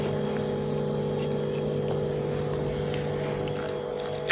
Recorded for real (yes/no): yes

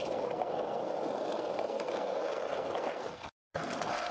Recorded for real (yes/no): no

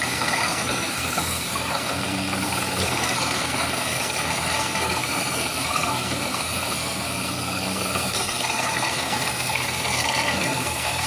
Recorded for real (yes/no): no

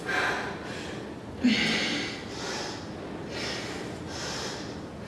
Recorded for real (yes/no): yes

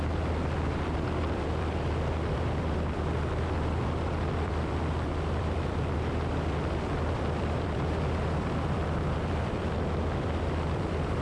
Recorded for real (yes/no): no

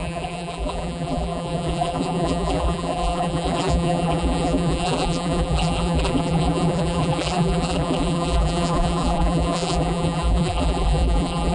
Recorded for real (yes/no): no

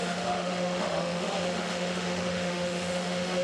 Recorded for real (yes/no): no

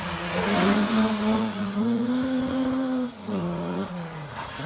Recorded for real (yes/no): no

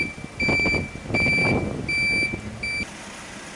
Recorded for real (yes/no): yes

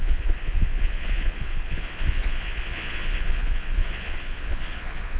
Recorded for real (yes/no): no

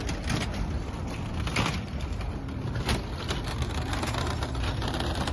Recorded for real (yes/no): yes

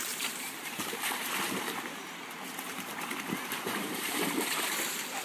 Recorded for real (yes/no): no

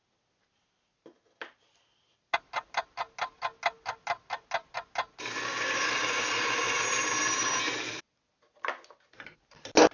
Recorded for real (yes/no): yes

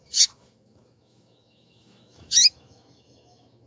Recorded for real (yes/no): no